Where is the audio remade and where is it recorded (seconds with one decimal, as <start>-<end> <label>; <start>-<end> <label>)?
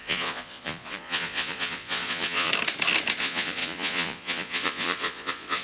0.0-2.5 remade; 2.5-3.2 recorded; 3.2-5.6 remade